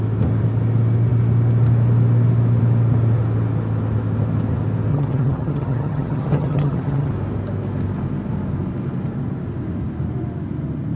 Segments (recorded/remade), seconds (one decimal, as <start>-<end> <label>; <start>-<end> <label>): 0.0-4.9 recorded; 4.9-7.1 remade; 7.1-11.0 recorded